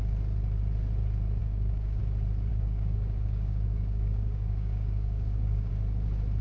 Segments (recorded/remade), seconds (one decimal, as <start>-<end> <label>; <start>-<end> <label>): 0.0-1.4 recorded; 1.4-2.0 remade; 2.0-2.5 recorded; 2.5-5.7 remade; 5.7-6.4 recorded